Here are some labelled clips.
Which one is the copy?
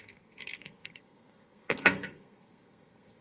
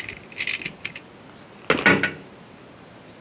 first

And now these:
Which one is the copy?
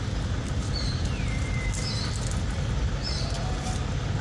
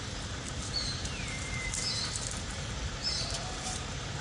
second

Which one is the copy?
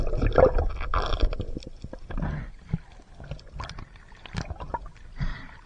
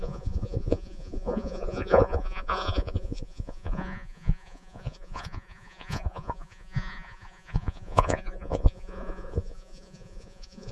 second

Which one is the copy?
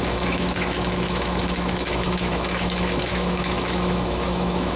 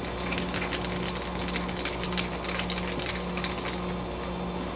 first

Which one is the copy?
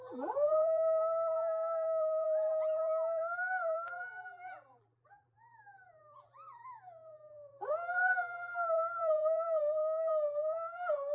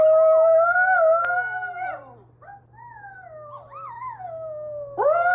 first